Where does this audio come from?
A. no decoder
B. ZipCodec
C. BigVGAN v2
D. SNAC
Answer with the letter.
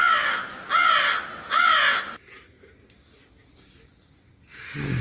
A